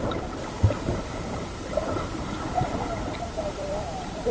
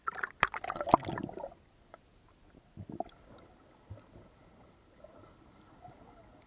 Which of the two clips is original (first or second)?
second